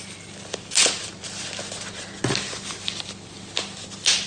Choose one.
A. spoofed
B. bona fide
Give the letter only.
B